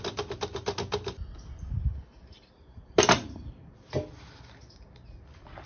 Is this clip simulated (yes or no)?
no